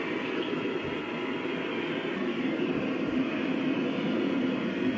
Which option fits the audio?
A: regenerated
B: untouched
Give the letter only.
B